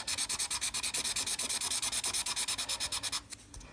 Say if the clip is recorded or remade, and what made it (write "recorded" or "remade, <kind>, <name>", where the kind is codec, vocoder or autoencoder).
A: recorded